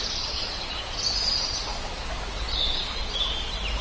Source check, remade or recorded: recorded